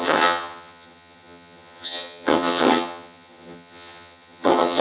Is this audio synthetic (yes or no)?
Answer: yes